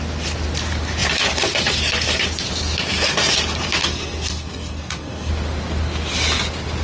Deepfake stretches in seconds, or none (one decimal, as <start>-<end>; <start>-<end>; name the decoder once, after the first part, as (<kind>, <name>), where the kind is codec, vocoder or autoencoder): 3.8-5.3 (codec, SNAC)